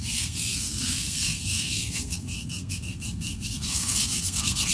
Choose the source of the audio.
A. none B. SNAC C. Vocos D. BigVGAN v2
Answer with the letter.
B